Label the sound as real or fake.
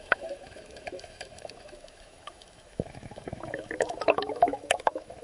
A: fake